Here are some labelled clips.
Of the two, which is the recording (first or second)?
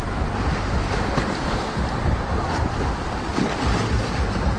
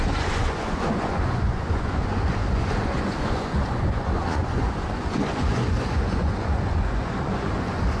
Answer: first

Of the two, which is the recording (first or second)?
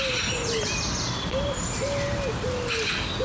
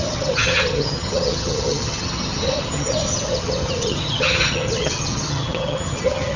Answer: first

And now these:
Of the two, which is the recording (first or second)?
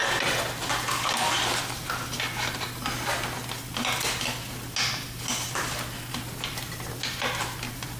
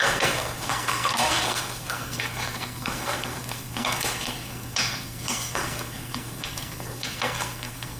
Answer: first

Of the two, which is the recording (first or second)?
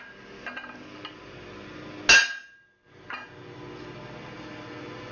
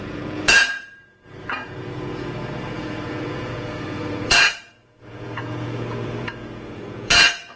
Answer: first